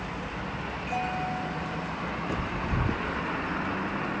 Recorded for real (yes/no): yes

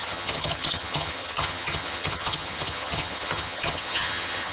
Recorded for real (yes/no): no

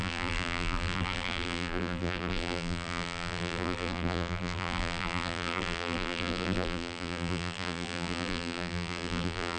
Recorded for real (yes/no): no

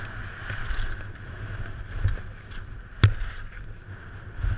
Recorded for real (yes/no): yes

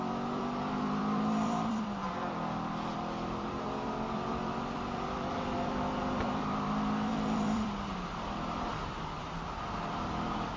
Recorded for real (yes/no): no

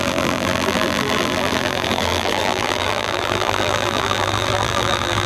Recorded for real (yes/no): no